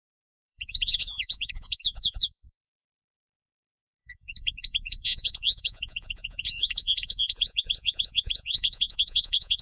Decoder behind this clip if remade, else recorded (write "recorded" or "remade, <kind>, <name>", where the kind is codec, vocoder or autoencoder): remade, vocoder, Vocos